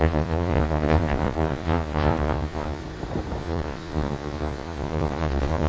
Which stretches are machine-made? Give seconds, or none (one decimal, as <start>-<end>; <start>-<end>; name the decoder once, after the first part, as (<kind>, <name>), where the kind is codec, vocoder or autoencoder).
0.0-2.8 (vocoder, Vocos); 3.4-5.7